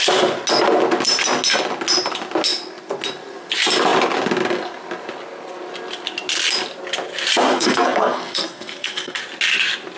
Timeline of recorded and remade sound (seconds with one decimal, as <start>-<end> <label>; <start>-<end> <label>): 0.0-7.5 recorded; 7.5-9.2 remade; 9.2-10.0 recorded

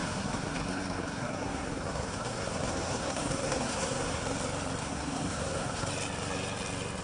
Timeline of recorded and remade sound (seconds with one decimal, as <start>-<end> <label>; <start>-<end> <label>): 0.0-4.2 remade; 4.2-4.8 recorded; 4.8-5.9 remade; 5.9-7.0 recorded

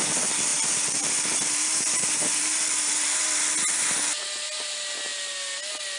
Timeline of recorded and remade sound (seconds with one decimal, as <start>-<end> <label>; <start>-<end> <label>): 0.0-0.5 recorded; 0.5-3.5 remade; 3.5-6.0 recorded

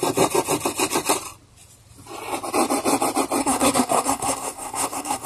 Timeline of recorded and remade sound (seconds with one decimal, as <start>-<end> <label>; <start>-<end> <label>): 0.0-3.4 recorded; 3.4-5.3 remade

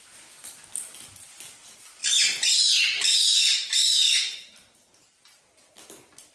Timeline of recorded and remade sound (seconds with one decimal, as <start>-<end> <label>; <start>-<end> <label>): 0.0-6.3 recorded

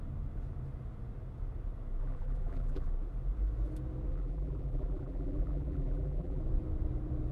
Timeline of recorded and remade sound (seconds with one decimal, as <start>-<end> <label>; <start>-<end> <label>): 0.0-2.0 recorded; 2.0-2.9 remade; 2.9-4.1 recorded; 4.1-6.4 remade; 6.4-7.3 recorded